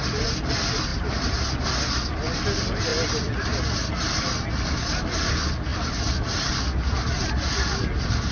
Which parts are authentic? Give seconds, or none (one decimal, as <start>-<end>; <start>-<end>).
0.0-0.9; 1.5-8.3